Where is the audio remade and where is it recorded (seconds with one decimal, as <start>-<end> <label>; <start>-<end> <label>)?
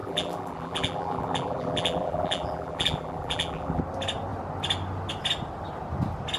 0.0-3.8 remade; 3.8-6.4 recorded